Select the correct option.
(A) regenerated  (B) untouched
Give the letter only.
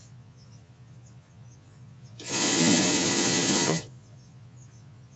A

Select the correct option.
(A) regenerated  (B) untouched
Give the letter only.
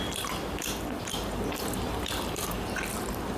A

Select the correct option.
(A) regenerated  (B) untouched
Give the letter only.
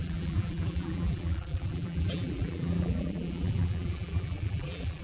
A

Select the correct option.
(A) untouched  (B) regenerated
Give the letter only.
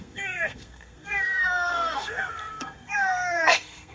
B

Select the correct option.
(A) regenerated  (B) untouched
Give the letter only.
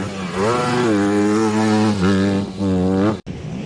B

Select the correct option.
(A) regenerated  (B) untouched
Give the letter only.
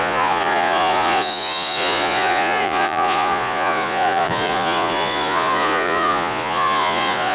A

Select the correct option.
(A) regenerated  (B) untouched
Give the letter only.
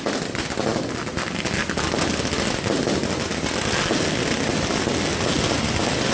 B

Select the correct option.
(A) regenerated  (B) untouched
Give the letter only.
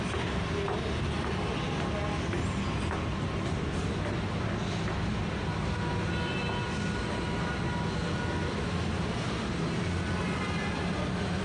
B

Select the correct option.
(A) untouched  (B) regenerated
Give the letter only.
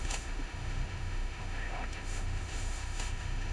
B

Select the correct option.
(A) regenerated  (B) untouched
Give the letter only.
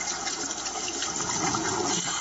B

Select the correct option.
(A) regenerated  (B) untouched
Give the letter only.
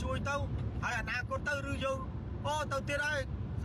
B